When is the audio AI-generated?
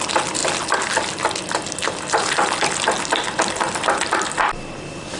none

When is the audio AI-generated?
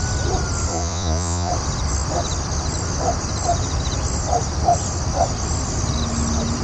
0.7-1.5 (vocoder, Vocos)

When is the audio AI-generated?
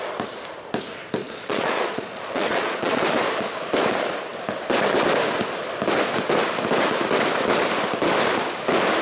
1.2-3.0 (vocoder, Vocos)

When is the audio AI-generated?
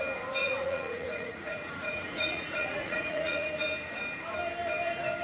0.4-3.5 (vocoder, Vocos)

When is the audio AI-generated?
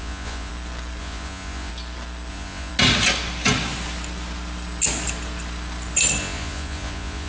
0.0-0.5 (vocoder, Vocos); 1.0-1.7; 2.3-2.7; 6.2-7.3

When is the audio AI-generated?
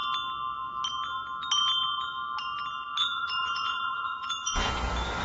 3.0-4.7 (vocoder, Vocos)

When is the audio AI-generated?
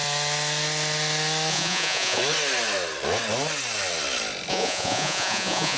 1.5-2.2 (vocoder, Vocos); 4.5-5.8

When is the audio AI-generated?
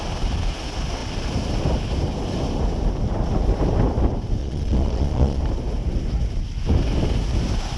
4.4-5.4 (vocoder, Vocos)